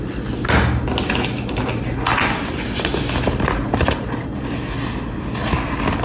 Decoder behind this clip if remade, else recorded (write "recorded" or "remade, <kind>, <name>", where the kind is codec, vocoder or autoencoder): recorded